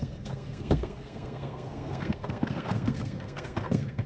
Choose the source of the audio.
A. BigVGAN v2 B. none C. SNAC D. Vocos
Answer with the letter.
C